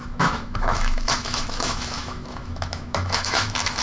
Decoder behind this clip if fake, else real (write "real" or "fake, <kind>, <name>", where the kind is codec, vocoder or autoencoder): fake, autoencoder, DAC-VAE